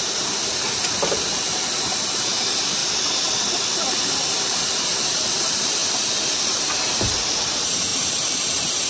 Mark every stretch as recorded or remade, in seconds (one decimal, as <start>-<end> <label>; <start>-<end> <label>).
0.0-2.8 remade; 2.8-3.4 recorded; 3.4-5.8 remade; 5.8-6.4 recorded; 6.4-8.9 remade